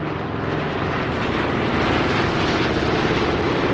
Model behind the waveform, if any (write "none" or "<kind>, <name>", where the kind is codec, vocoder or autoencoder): none